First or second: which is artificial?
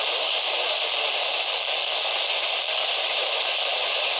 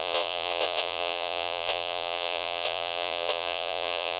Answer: second